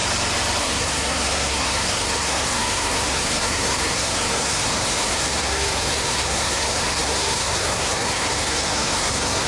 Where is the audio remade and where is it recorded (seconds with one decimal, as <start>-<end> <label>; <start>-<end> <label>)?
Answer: 0.0-0.6 recorded; 0.6-9.5 remade